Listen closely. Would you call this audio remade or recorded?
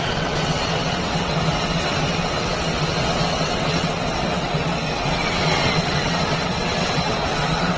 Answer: remade